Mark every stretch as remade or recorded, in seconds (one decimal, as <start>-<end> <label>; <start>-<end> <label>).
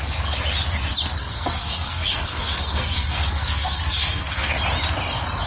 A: 0.0-1.2 recorded; 1.2-4.5 remade; 4.5-5.5 recorded